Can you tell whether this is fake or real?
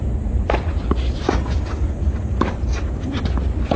real